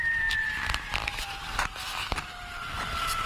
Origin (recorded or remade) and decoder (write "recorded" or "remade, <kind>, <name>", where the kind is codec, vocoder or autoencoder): remade, vocoder, BigVGAN v2